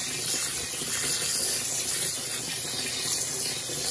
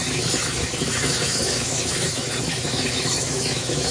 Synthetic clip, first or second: second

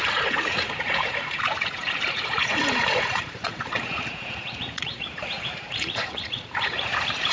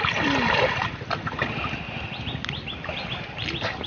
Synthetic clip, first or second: first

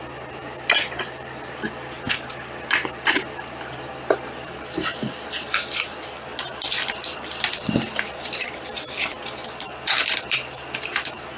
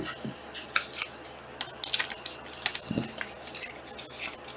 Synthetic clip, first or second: first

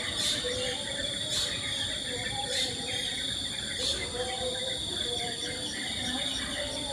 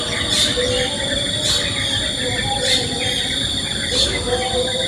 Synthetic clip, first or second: first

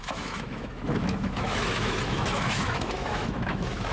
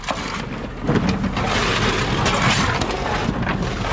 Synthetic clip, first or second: first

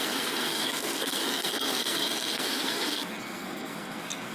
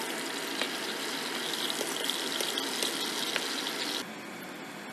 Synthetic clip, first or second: first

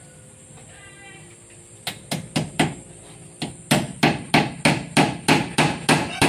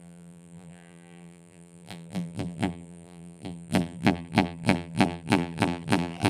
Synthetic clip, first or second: second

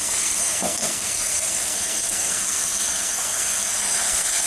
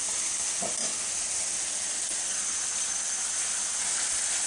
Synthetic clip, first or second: first